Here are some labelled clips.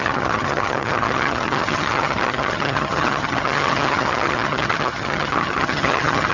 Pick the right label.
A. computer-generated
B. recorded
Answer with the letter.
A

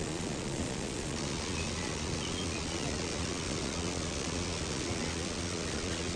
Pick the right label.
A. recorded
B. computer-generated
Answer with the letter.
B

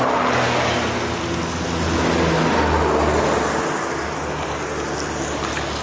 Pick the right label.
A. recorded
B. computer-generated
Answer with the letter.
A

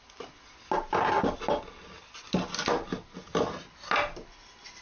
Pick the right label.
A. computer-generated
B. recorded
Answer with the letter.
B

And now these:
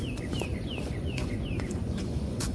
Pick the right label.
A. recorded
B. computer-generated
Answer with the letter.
B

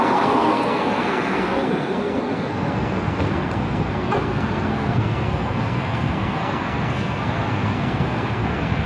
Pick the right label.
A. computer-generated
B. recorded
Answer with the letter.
A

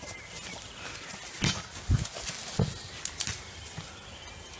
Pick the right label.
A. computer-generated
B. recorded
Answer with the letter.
B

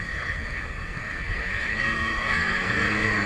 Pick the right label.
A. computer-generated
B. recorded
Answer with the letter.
A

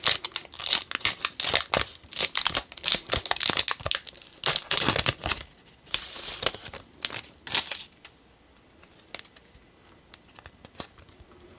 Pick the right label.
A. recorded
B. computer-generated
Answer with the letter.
A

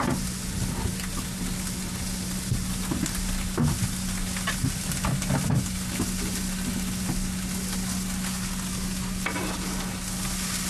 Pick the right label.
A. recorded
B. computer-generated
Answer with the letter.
A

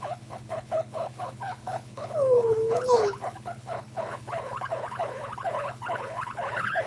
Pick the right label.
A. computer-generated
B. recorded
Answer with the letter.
A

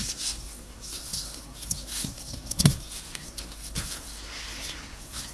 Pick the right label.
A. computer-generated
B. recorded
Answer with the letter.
A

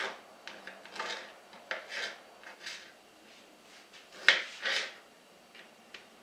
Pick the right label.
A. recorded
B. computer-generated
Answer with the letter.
A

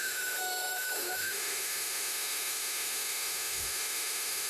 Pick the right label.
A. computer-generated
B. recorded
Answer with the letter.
A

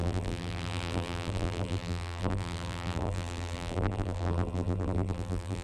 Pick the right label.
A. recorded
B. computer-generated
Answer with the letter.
B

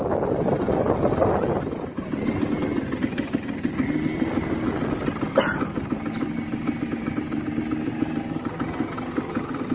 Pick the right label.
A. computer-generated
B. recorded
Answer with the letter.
B